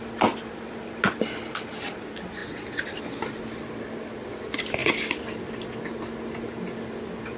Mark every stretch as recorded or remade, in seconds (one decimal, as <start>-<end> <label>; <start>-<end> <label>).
0.0-7.4 recorded